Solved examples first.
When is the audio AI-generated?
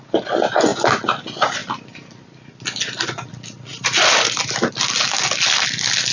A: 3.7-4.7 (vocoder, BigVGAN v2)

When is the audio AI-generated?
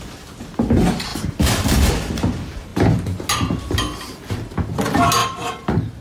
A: 1.1-1.9 (vocoder, BigVGAN v2); 5.2-6.0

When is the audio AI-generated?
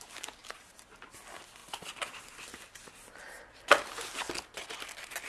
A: 0.4-0.9 (vocoder, BigVGAN v2)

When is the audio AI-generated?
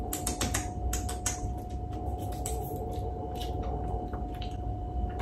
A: none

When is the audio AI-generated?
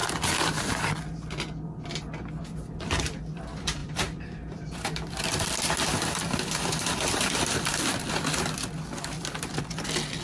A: 3.8-8.1 (vocoder, BigVGAN v2)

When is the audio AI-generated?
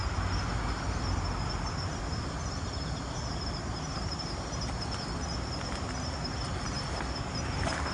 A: none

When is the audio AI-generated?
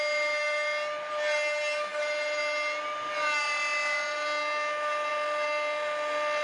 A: none